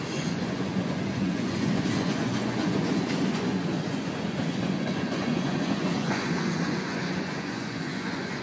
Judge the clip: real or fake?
fake